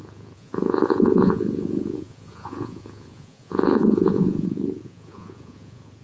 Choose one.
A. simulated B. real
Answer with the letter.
A